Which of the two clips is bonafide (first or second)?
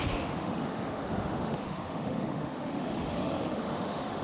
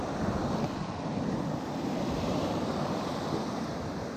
second